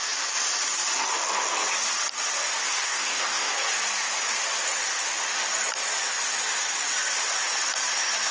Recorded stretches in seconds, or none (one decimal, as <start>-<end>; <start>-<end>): 0.0-2.6; 3.5-8.3